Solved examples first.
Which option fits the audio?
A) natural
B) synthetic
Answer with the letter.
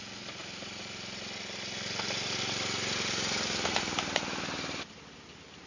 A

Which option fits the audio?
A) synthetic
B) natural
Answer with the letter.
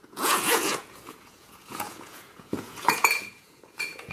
A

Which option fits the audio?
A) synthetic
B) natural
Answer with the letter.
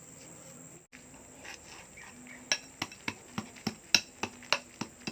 B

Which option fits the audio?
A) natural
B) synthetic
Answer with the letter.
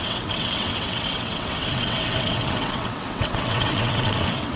B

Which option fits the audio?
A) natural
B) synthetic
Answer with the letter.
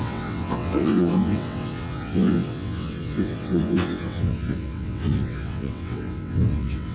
B